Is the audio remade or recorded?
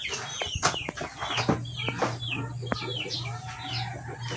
recorded